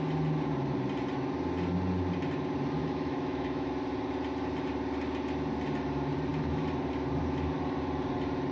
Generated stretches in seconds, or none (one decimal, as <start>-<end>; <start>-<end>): 2.8-3.7